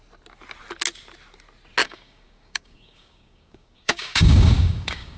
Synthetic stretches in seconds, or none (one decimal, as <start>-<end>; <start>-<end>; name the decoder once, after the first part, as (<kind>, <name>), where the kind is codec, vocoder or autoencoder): 1.8-5.2 (codec, DAC)

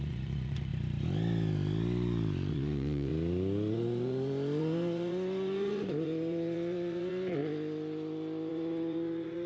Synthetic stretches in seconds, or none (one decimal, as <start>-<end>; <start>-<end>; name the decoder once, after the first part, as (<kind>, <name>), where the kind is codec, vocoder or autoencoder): 0.0-0.7 (vocoder, Vocos); 2.5-3.1; 3.7-7.4; 8.5-9.5

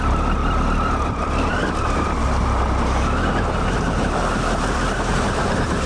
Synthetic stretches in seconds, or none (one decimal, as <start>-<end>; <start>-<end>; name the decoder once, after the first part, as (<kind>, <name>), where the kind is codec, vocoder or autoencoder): 0.0-0.4 (vocoder, BigVGAN v2); 1.1-1.6; 5.1-5.9

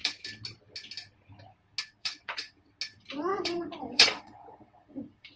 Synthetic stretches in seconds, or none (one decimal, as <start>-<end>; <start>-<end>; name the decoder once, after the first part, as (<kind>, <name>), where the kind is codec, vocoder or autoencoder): 2.0-2.7 (vocoder, WaveNeXt); 3.3-5.4

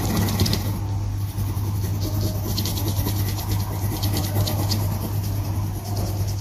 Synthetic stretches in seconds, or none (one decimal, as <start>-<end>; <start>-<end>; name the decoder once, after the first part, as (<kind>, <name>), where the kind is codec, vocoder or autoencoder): none